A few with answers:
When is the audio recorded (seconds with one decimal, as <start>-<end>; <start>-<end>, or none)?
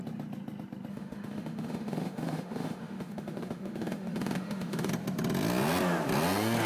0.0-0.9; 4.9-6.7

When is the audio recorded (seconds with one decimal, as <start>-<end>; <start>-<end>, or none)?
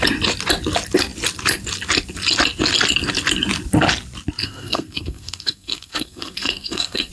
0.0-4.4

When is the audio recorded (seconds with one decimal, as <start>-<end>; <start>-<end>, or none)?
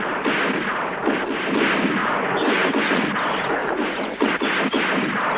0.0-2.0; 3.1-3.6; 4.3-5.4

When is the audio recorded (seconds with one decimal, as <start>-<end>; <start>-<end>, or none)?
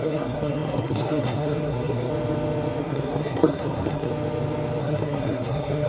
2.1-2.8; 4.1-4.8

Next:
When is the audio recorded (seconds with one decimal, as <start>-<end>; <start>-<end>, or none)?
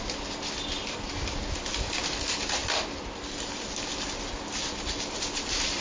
0.0-5.8